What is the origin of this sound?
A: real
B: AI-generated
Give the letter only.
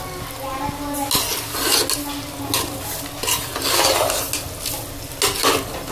A